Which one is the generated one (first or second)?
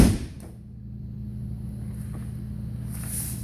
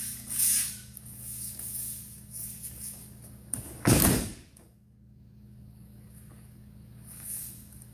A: second